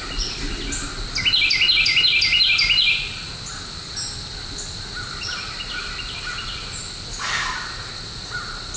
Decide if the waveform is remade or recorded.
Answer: recorded